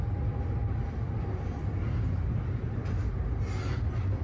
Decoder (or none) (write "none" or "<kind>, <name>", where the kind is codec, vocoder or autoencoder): none